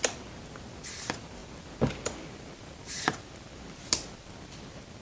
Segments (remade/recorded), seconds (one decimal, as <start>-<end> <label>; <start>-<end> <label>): 0.0-5.0 recorded